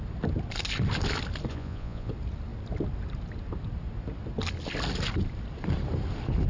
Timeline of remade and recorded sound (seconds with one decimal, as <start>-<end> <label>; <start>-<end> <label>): 0.0-1.5 recorded; 1.5-2.1 remade; 2.1-6.5 recorded